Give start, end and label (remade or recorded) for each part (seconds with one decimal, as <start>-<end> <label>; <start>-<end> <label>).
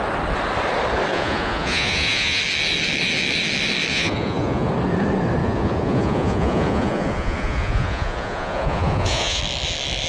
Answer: 0.0-1.1 recorded; 1.1-2.4 remade; 2.4-3.9 recorded; 3.9-4.7 remade; 4.7-5.4 recorded; 5.4-9.4 remade; 9.4-10.1 recorded